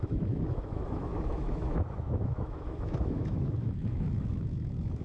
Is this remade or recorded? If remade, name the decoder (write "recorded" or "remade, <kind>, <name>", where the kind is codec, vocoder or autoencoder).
remade, autoencoder, DAC-VAE